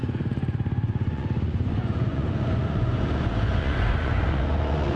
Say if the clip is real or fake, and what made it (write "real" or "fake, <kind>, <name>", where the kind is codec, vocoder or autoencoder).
fake, vocoder, Vocos